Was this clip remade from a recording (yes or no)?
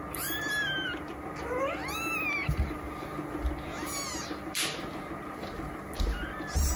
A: no